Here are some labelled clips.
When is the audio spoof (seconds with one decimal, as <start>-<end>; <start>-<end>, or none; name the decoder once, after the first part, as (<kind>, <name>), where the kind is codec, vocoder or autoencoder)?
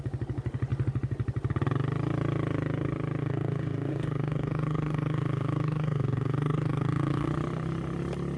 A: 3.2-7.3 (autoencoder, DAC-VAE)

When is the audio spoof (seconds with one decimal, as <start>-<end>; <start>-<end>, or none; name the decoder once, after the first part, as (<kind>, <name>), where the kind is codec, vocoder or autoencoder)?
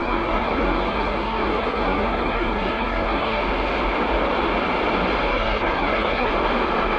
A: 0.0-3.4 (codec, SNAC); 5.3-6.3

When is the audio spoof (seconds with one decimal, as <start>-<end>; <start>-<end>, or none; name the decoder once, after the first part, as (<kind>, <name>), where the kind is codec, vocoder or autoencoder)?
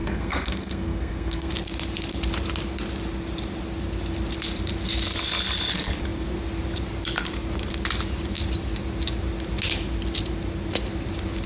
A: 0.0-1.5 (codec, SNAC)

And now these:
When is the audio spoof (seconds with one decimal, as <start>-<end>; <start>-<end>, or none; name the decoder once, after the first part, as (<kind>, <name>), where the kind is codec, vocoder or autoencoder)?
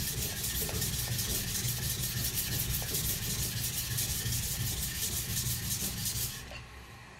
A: none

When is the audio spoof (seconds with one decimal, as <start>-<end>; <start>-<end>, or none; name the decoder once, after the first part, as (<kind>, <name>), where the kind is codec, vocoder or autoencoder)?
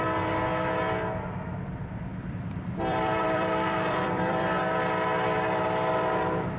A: 2.1-4.6 (vocoder, BigVGAN v2)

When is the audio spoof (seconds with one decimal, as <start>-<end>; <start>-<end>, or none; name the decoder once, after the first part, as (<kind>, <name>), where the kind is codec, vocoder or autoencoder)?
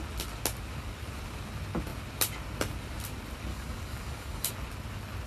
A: 3.5-4.5 (codec, DAC)